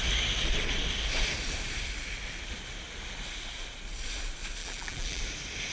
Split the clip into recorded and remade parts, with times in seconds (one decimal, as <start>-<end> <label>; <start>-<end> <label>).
0.0-4.6 recorded; 4.6-5.2 remade; 5.2-5.7 recorded